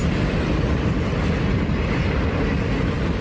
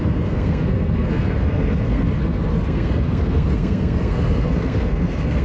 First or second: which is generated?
second